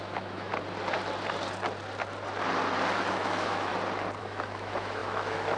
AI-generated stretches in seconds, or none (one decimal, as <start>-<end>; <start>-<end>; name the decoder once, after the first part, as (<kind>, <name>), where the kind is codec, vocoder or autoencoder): 0.0-0.5 (autoencoder, DAC-VAE); 3.1-3.7; 4.2-5.6